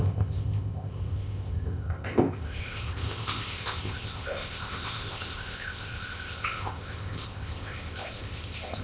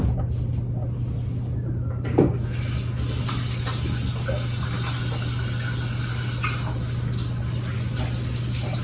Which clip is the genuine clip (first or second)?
second